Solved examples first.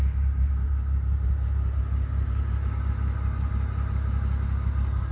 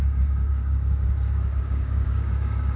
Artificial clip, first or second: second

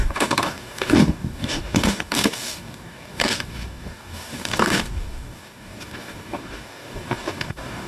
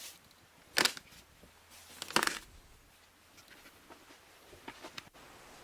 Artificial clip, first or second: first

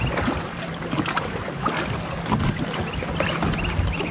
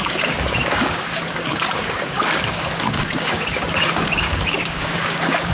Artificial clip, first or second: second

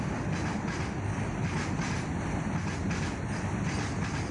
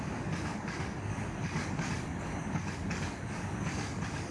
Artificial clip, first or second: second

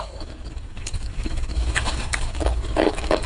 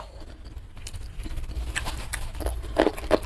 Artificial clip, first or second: first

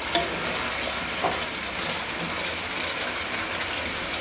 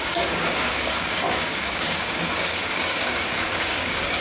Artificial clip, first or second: second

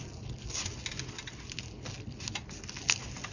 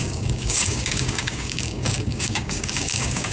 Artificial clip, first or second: second